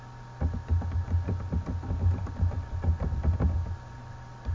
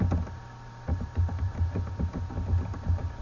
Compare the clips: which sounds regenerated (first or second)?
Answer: second